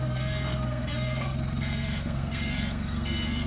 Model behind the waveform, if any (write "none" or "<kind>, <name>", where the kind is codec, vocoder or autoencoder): codec, SNAC